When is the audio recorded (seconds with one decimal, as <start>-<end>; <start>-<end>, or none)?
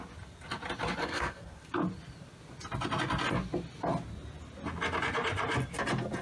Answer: 0.0-1.0; 1.5-6.2